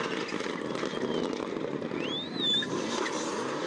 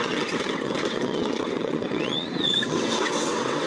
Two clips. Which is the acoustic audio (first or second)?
first